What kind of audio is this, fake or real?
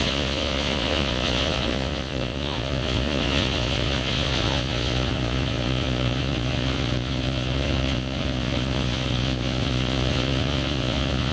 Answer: fake